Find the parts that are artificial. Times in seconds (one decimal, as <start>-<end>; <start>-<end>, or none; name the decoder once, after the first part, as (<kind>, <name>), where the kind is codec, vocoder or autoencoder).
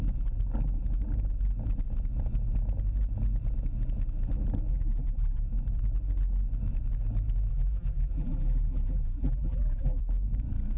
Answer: 4.7-5.5 (vocoder, BigVGAN v2); 7.5-10.0